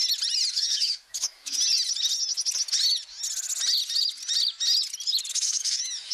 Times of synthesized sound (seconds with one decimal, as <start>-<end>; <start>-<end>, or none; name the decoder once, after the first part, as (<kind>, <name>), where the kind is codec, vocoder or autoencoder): 0.5-1.6 (autoencoder, DAC-VAE); 5.3-6.1